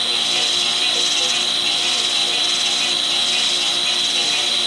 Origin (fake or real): real